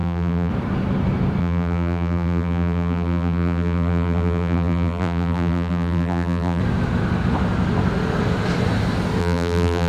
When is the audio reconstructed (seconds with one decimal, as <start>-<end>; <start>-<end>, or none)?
0.0-0.5; 1.4-6.6; 9.2-9.9